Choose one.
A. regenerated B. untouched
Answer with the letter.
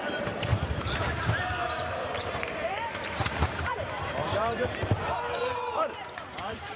A